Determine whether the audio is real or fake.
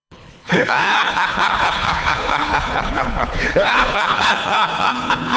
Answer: fake